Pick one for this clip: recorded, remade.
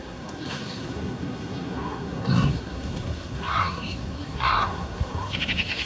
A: remade